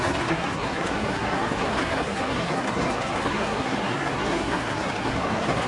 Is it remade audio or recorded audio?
remade